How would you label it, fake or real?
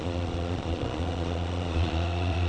fake